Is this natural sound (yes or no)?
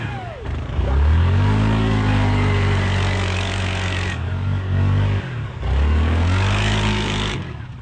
no